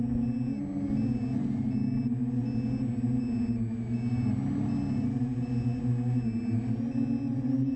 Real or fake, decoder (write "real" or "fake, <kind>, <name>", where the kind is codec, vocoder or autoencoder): real